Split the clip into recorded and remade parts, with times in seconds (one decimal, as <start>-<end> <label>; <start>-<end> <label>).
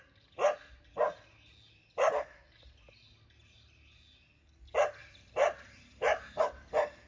0.0-5.0 recorded; 5.0-6.4 remade; 6.4-7.1 recorded